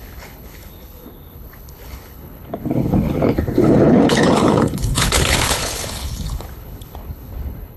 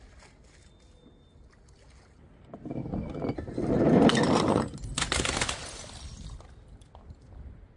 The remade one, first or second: first